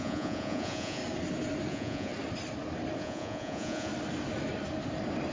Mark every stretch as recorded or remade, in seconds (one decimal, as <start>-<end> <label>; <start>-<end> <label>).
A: 0.0-1.0 remade; 1.0-1.7 recorded; 1.7-2.1 remade; 2.1-3.0 recorded; 3.0-3.9 remade; 3.9-5.3 recorded